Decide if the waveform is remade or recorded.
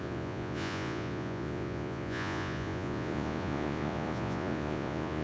remade